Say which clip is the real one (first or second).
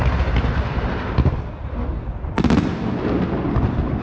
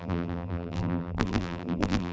first